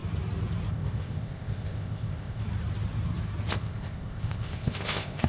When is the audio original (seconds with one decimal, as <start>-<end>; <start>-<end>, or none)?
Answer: 0.0-0.7; 2.4-3.5

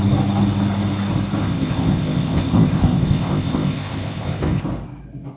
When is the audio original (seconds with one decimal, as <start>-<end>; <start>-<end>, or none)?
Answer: 0.0-1.4; 4.6-5.4

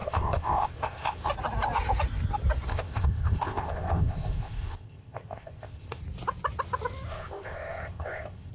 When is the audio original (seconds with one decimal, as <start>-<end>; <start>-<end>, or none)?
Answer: 1.3-2.7; 6.0-7.1